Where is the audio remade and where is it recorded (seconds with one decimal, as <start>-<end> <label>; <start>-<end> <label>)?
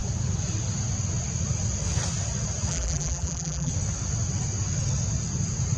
0.0-2.7 recorded; 2.7-3.7 remade; 3.7-5.8 recorded